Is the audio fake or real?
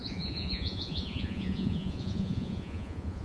fake